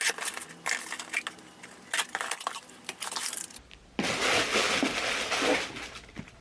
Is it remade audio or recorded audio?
recorded